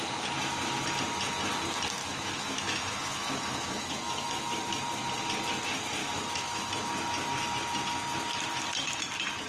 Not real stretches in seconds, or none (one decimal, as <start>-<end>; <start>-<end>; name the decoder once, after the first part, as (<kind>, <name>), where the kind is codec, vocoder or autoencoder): 2.0-4.8 (autoencoder, DAC-VAE); 6.0-6.7